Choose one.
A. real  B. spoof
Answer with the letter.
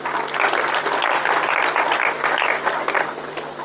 A